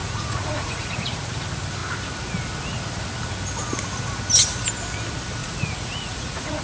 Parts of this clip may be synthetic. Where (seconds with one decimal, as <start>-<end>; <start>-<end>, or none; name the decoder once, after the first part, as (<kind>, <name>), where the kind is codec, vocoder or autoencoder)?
0.0-1.3 (vocoder, Vocos); 5.4-6.6